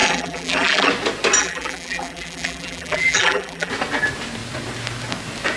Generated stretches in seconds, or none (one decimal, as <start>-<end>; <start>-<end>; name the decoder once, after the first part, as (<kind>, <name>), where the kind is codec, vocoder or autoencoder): 0.0-0.9 (vocoder, BigVGAN v2); 1.4-3.7